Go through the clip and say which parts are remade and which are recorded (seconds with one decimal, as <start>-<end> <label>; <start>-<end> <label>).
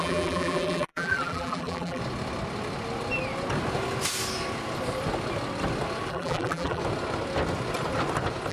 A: 0.0-2.0 remade; 2.0-6.1 recorded; 6.1-6.8 remade; 6.8-8.5 recorded